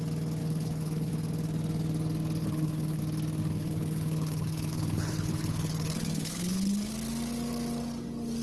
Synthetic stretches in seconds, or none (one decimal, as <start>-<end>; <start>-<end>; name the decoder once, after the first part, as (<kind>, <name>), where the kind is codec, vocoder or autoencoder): 0.4-1.1 (codec, HILCodec); 2.4-3.0; 3.4-6.9